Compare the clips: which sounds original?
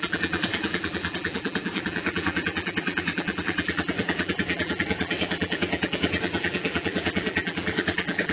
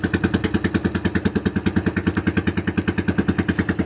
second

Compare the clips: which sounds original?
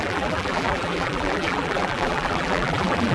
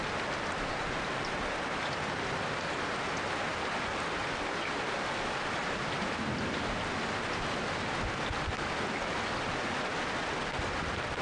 second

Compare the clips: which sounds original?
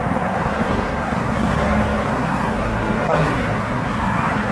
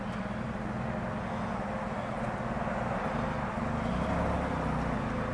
second